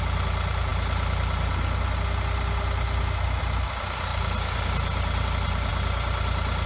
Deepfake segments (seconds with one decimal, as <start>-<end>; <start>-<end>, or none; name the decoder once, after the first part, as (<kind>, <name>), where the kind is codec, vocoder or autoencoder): none